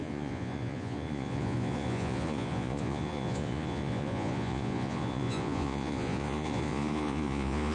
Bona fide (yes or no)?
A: no